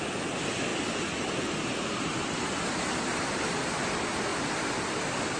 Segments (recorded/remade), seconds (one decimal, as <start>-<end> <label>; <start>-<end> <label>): 0.0-5.4 recorded